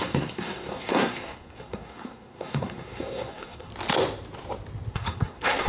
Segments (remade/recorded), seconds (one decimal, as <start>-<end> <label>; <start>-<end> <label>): 0.0-3.7 remade; 3.7-4.9 recorded; 4.9-5.7 remade